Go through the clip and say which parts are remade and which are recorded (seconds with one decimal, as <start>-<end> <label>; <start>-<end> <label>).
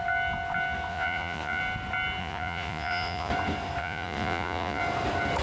0.0-0.9 recorded; 0.9-1.6 remade; 1.6-2.2 recorded; 2.2-3.3 remade; 3.3-3.8 recorded; 3.8-4.8 remade; 4.8-5.4 recorded